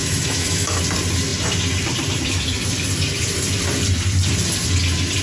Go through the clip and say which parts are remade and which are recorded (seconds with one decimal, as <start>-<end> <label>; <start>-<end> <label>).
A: 0.0-0.8 remade; 0.8-5.2 recorded